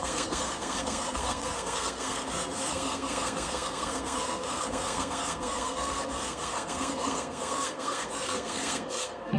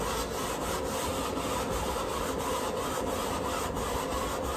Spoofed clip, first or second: first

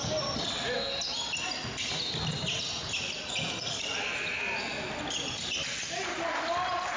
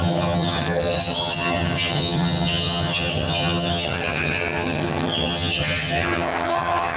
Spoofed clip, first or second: second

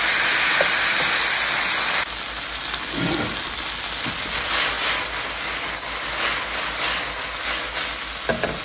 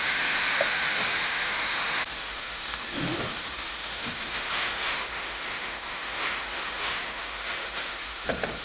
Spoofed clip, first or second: second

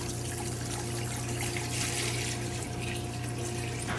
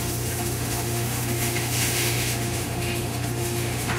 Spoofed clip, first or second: second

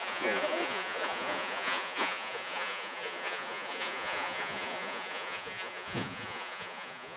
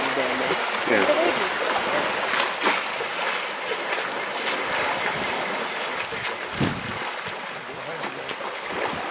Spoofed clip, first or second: first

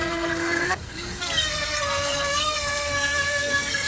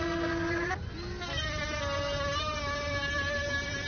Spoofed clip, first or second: first